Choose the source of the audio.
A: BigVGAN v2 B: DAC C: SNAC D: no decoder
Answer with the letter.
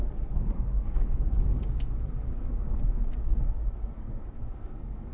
C